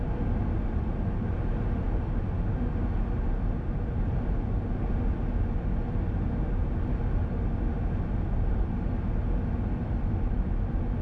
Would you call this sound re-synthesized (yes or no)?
no